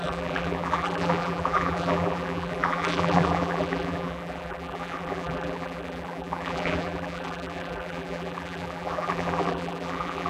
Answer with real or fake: fake